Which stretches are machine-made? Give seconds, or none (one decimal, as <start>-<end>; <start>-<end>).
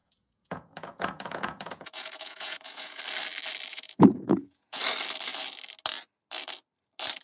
0.0-3.0; 3.7-4.8